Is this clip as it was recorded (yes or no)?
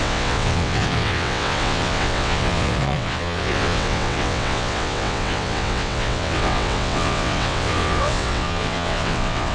no